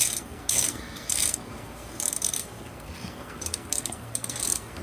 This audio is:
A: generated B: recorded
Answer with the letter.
A